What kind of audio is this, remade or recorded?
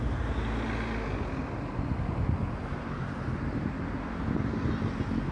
recorded